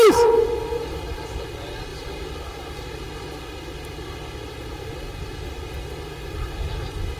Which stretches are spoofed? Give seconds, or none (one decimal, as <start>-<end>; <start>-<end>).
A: none